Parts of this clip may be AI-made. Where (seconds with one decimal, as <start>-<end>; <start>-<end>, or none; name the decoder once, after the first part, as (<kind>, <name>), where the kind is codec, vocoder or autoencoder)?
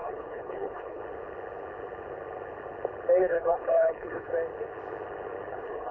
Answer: 0.0-1.0 (codec, HILCodec); 3.2-4.3; 5.5-5.9